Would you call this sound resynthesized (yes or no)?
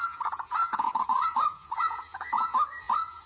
yes